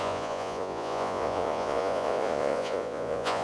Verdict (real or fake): fake